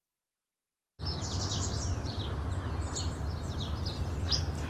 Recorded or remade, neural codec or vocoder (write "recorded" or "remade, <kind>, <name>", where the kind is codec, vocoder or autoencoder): recorded